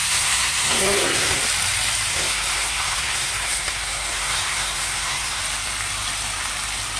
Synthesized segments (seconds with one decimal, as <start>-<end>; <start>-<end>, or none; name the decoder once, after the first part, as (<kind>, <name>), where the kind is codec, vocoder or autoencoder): 0.0-1.4 (codec, SNAC); 2.1-5.4